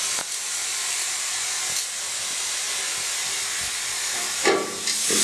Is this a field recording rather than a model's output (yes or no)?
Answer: yes